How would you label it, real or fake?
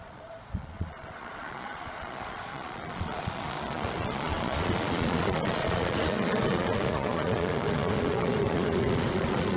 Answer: fake